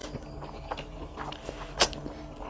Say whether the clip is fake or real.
real